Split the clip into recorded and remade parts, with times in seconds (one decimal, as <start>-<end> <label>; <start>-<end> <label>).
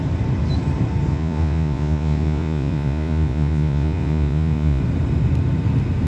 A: 0.0-1.1 recorded; 1.1-4.8 remade; 4.8-6.1 recorded